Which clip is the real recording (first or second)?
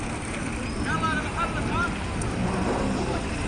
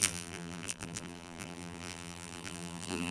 first